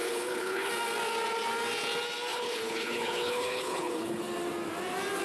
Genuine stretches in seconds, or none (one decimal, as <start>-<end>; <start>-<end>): 0.7-2.3; 4.2-5.2